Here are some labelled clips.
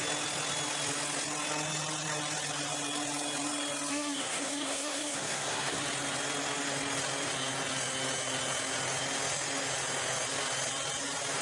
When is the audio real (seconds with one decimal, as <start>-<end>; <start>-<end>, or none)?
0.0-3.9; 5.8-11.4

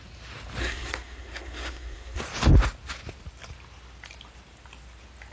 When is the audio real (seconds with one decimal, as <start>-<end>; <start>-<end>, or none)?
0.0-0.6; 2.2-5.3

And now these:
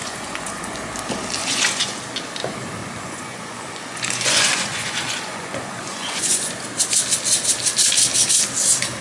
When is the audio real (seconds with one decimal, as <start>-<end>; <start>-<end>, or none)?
0.8-1.4; 2.0-2.8; 6.5-9.0

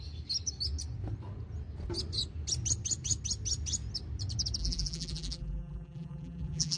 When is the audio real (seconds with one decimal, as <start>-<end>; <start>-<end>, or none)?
0.0-4.6

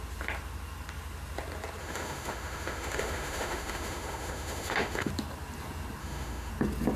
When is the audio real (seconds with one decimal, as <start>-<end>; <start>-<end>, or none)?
0.0-1.8; 5.1-6.0; 6.5-7.0

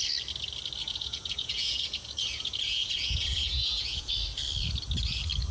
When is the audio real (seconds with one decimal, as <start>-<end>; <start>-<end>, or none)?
0.0-0.8; 4.1-5.5

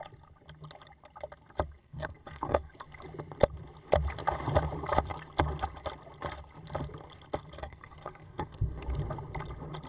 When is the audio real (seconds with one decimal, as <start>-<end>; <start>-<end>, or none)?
0.0-1.8; 2.7-7.6; 8.8-9.9

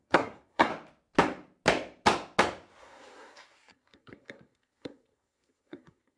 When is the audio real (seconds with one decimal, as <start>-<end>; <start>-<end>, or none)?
0.7-2.8